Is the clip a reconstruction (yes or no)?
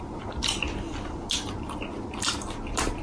no